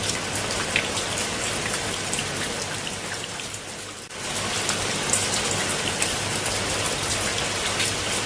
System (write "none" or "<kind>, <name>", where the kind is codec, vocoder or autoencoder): none